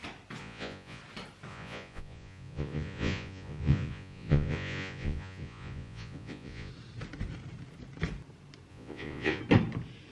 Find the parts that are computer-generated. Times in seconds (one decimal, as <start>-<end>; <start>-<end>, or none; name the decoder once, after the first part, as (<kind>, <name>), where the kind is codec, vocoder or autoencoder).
0.4-1.0 (vocoder, Vocos); 1.5-6.7; 8.7-9.4